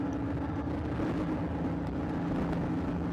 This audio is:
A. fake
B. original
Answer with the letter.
B